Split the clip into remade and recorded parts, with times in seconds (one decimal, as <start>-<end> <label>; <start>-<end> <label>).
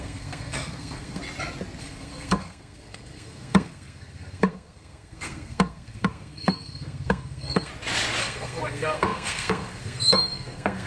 0.0-1.2 remade; 1.2-1.8 recorded; 1.8-7.7 remade; 7.7-8.2 recorded; 8.2-10.9 remade